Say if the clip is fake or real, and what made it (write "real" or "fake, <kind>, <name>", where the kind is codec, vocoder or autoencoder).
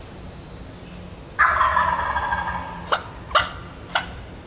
real